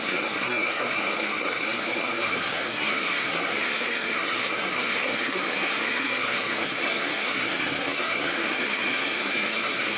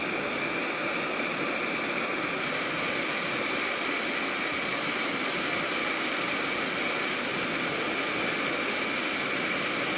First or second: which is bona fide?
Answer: second